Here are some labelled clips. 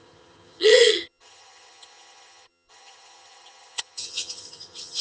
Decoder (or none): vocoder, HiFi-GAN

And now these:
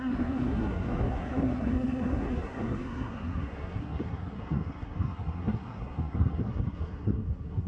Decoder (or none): codec, SNAC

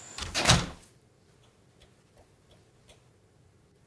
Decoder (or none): none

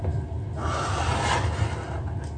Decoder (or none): none